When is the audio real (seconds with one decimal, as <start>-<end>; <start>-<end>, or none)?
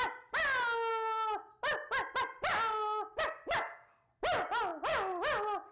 0.0-4.7; 5.2-5.7